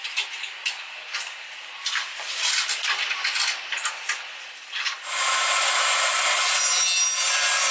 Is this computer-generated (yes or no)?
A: no